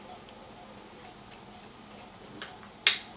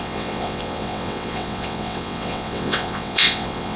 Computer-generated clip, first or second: second